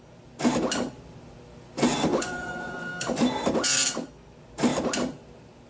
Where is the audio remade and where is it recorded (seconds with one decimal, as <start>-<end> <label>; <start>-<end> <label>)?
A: 0.0-2.1 recorded; 2.1-2.9 remade; 2.9-5.7 recorded